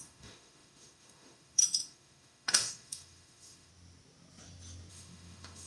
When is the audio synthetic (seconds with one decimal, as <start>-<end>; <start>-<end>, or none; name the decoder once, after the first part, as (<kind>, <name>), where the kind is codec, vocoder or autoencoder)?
0.0-3.7 (autoencoder, DAC-VAE); 4.9-5.7